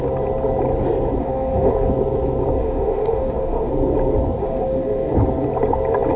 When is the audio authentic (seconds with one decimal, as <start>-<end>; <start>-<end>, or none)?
0.0-1.2; 1.7-2.6; 3.7-4.4; 5.1-6.2